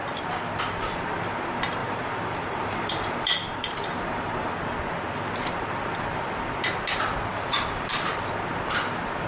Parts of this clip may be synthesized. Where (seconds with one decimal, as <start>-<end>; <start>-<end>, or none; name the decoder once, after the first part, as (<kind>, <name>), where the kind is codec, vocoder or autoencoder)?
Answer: 1.8-4.5 (vocoder, BigVGAN v2); 7.3-8.1